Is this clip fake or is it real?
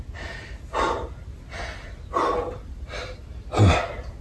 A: real